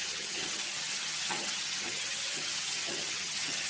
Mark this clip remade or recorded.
remade